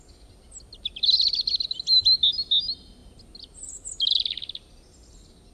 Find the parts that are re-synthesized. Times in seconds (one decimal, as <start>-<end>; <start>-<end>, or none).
none